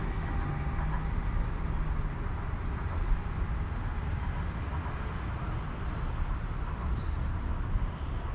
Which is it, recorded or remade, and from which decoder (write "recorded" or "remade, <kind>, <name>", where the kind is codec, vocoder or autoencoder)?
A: recorded